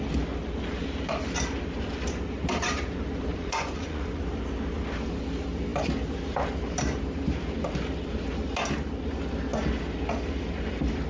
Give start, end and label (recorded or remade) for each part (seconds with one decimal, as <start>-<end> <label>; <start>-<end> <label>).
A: 0.0-3.3 recorded; 3.3-4.2 remade; 4.2-11.1 recorded